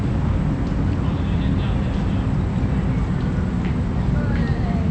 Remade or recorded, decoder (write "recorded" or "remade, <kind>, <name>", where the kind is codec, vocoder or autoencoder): recorded